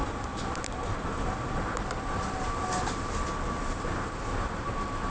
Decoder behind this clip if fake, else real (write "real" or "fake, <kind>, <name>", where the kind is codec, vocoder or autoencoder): real